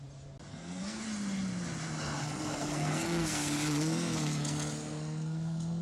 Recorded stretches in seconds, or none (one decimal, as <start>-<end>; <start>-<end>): 0.0-0.5; 1.0-2.2